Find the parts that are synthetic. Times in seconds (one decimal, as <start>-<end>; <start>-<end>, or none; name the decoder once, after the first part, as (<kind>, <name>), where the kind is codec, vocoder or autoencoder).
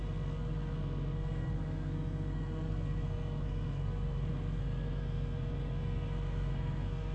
0.0-7.1 (codec, SNAC)